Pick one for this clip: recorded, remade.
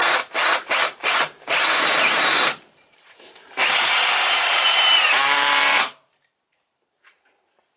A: remade